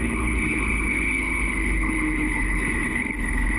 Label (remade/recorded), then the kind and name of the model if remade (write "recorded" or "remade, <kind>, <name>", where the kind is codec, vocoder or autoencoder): remade, codec, HILCodec